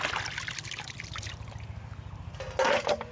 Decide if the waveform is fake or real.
real